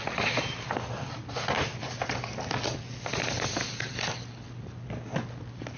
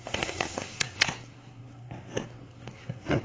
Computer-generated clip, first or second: second